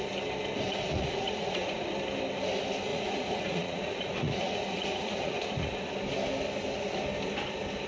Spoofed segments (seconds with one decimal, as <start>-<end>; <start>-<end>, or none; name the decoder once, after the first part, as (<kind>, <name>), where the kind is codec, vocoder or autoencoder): 0.9-1.8 (vocoder, Vocos); 2.9-5.9